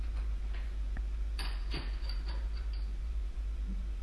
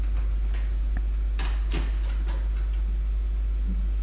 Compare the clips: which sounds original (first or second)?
second